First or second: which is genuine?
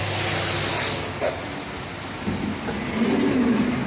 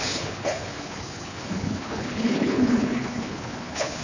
first